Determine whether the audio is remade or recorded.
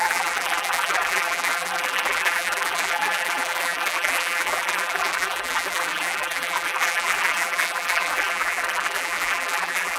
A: remade